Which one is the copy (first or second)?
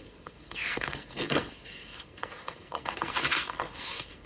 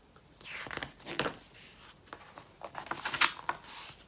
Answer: first